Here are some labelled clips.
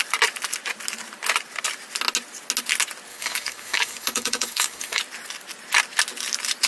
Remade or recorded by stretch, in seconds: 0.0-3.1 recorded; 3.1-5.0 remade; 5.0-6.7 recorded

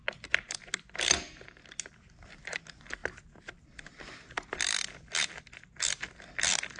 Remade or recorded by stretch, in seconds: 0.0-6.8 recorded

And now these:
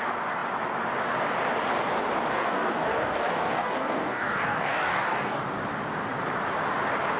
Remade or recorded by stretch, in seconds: 0.0-2.3 recorded; 2.3-5.4 remade; 5.4-7.2 recorded

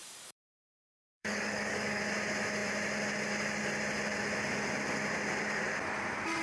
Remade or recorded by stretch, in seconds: 0.0-2.0 remade; 2.0-6.4 recorded